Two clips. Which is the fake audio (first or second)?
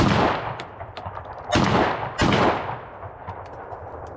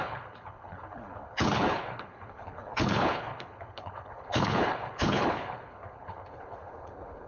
second